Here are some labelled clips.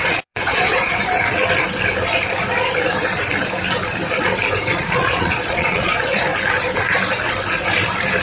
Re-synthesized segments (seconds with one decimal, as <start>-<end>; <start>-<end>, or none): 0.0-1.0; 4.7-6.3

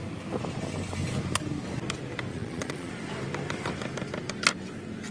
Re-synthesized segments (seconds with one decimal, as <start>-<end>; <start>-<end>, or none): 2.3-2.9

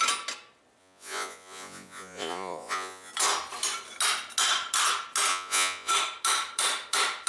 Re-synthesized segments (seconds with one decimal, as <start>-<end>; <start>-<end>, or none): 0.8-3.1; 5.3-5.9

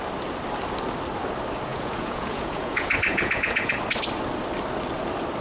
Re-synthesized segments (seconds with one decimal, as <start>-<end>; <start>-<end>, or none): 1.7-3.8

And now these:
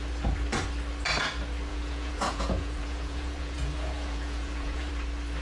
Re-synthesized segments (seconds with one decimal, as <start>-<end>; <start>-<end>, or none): 1.7-4.9

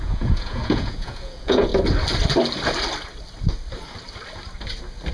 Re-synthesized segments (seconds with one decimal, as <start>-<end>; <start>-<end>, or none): 0.0-1.7